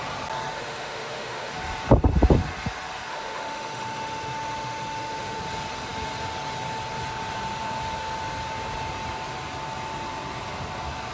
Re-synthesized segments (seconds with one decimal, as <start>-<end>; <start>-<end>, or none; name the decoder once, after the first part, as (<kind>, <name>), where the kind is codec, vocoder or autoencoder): 0.5-1.5 (autoencoder, DAC-VAE); 3.1-5.4